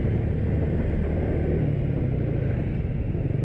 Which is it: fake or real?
real